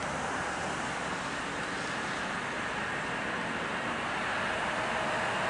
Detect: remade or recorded recorded